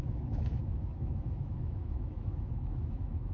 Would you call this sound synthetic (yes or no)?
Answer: yes